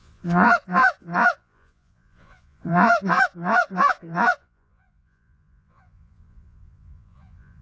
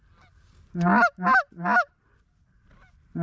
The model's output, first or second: first